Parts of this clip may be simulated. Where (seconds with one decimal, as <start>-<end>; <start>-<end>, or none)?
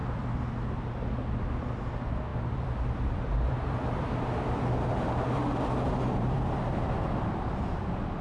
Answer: 2.3-7.2